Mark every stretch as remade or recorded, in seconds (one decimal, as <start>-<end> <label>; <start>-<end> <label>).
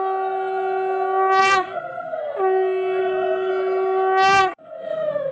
0.0-1.4 recorded; 1.4-2.2 remade; 2.2-3.0 recorded; 3.0-3.5 remade; 3.5-4.4 recorded; 4.4-5.3 remade